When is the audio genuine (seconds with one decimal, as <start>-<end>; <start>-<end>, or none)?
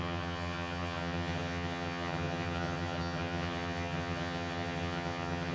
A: none